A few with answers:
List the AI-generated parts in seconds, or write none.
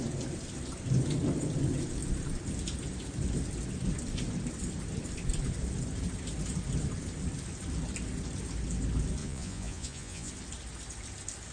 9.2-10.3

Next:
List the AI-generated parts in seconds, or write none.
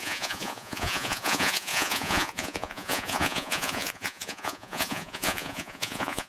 0.0-6.3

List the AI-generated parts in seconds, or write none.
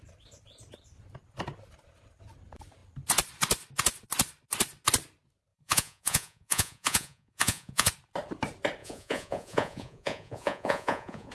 5.5-7.9; 8.8-11.3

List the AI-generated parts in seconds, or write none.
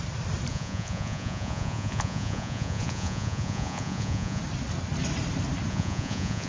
0.5-4.4; 5.7-6.5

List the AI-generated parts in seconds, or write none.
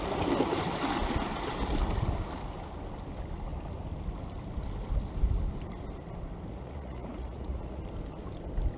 6.5-7.8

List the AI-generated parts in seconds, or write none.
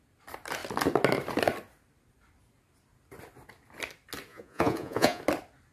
4.3-5.2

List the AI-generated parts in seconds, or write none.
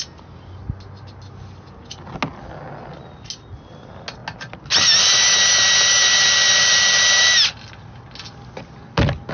none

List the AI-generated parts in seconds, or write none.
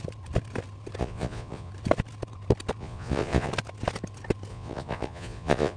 1.0-1.7; 2.8-3.5; 4.5-5.8